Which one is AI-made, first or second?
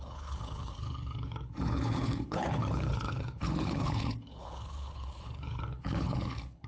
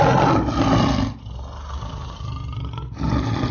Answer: first